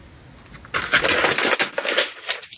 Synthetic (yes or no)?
no